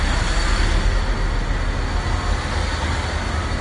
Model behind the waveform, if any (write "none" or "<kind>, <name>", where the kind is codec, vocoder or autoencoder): none